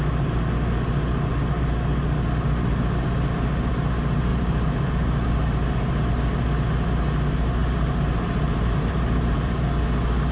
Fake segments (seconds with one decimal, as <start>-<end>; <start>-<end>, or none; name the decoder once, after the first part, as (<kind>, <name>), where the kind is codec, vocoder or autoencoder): 4.3-6.1 (vocoder, BigVGAN v2); 7.6-9.6